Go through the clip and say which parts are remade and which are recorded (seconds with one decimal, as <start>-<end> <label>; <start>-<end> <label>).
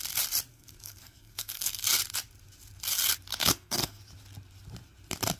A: 0.0-0.5 recorded; 0.5-1.8 remade; 1.8-3.3 recorded; 3.3-4.0 remade; 4.0-5.4 recorded